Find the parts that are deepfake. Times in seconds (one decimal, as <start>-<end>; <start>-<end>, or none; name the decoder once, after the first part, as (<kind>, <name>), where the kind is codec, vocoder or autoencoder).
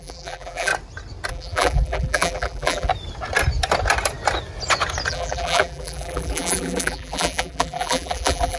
0.0-0.7 (vocoder, BigVGAN v2); 1.3-2.9; 5.1-8.6